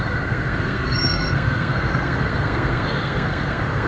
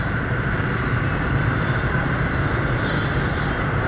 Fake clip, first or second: first